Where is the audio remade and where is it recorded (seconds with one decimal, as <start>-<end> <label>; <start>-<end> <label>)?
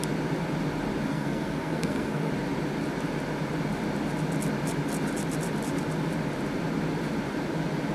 0.0-1.1 recorded; 1.1-2.3 remade; 2.3-7.9 recorded